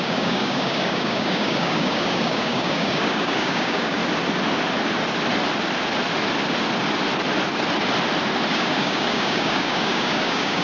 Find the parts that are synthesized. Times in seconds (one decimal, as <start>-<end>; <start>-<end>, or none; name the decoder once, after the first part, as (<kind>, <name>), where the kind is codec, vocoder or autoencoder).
0.0-4.0 (codec, DAC); 8.5-10.6

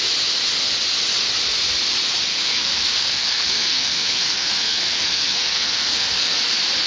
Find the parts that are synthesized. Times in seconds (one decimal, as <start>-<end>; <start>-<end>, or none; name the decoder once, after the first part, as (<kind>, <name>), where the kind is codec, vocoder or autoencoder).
2.3-6.4 (codec, SNAC)

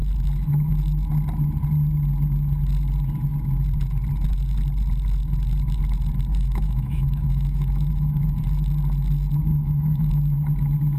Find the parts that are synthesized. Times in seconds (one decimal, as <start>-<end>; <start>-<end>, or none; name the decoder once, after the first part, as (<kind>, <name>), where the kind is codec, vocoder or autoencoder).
6.3-8.2 (autoencoder, DAC-VAE); 9.5-10.1

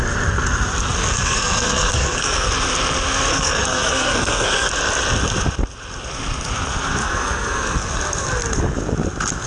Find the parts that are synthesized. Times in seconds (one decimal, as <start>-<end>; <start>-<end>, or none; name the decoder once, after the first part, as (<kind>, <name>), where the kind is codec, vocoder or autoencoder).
1.0-2.5 (codec, SNAC); 3.3-4.7; 7.0-7.9

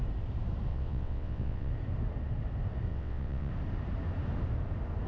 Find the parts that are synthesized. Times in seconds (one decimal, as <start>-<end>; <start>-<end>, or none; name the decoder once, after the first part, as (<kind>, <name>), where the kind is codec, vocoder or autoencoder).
0.7-1.7 (vocoder, WaveNeXt); 2.9-3.5

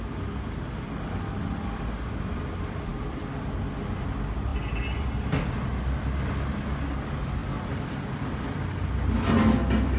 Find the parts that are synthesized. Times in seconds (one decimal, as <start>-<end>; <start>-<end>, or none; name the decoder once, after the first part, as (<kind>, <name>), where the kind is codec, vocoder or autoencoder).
none

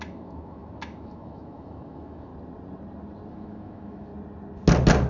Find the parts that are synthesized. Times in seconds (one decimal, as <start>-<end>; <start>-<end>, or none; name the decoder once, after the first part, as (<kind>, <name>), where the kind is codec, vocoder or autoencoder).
0.0-2.3 (autoencoder, DAC-VAE); 3.3-4.1

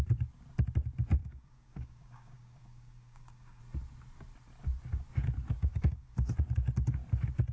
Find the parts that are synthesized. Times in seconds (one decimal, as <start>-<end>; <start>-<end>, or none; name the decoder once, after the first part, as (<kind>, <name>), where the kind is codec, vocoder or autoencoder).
1.2-3.6 (codec, DAC); 5.7-6.3